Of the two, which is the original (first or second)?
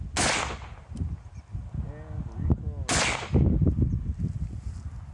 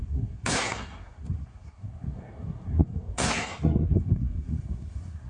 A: first